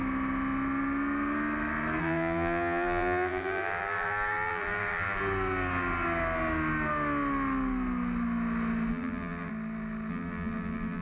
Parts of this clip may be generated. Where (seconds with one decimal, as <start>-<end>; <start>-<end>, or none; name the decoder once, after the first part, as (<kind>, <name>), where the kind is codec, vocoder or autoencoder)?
2.0-5.2 (vocoder, BigVGAN v2); 8.9-9.5; 10.1-11.0